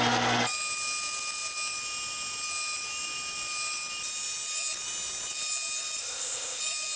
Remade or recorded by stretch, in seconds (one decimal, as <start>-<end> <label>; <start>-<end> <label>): 0.0-6.0 recorded; 6.0-6.6 remade; 6.6-7.0 recorded